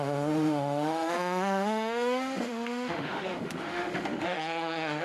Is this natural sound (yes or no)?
no